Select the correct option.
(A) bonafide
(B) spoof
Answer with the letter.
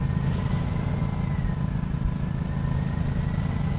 A